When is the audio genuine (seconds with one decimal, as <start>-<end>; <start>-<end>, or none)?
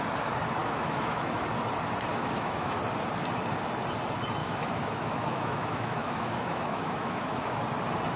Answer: 0.0-0.6; 1.2-2.1; 2.8-4.4; 7.6-8.2